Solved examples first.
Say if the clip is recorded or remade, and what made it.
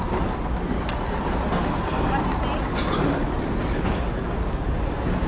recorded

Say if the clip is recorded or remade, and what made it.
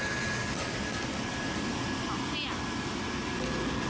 recorded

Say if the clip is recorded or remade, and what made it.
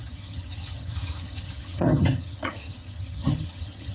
remade, vocoder, HiFi-GAN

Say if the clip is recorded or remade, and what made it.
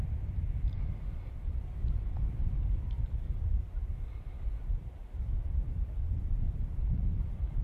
remade, vocoder, BigVGAN v2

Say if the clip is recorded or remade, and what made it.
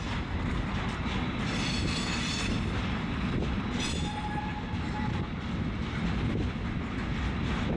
recorded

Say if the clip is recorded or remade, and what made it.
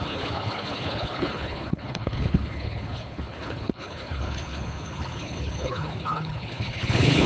remade, codec, HILCodec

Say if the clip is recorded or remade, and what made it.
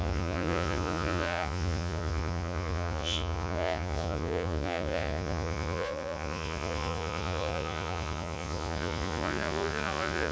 remade, vocoder, Vocos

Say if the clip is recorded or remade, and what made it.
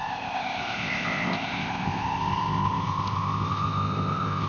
remade, codec, ZipCodec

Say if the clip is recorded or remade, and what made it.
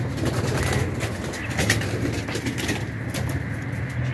recorded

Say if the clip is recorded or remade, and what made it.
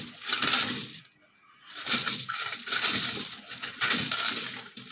recorded